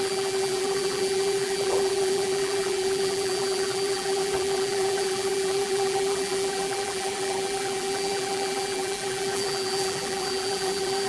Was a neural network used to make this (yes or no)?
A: yes